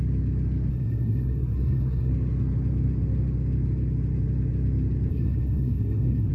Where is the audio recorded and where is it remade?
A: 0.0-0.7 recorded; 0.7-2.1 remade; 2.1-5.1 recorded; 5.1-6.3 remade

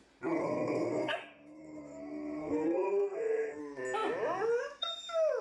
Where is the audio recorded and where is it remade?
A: 0.0-0.4 recorded; 0.4-3.6 remade; 3.6-5.4 recorded

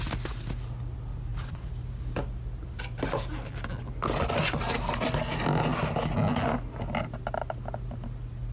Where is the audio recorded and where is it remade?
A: 0.0-1.3 recorded; 1.3-2.2 remade; 2.2-8.5 recorded

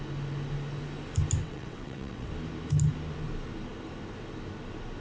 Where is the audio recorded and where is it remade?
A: 0.0-1.4 recorded; 1.4-2.3 remade; 2.3-5.0 recorded